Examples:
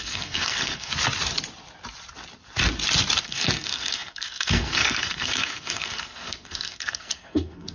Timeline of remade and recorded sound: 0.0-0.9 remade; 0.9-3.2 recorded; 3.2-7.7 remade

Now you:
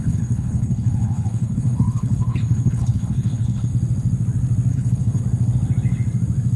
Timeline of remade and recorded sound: 0.0-3.7 remade; 3.7-4.7 recorded; 4.7-5.2 remade; 5.2-6.6 recorded

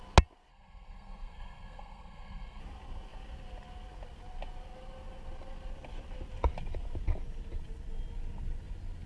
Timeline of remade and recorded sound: 0.0-0.5 recorded; 0.5-2.6 remade; 2.6-9.1 recorded

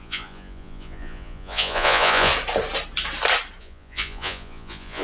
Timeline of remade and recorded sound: 0.0-2.3 remade; 2.3-3.6 recorded; 3.6-5.0 remade

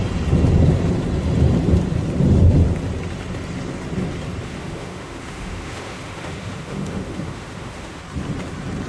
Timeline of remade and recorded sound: 0.0-4.4 recorded; 4.4-8.0 remade; 8.0-8.9 recorded